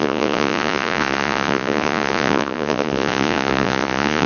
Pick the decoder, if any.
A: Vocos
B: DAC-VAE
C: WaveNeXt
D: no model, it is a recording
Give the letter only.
A